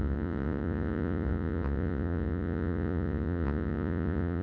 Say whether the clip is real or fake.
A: fake